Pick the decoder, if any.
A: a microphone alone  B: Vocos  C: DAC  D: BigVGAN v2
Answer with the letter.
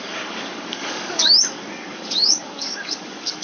C